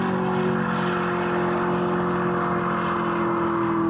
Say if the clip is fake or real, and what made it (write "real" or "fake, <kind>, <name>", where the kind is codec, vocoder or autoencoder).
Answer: real